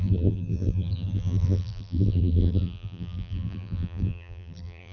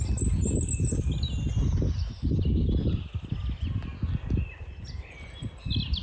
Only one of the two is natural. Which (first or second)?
second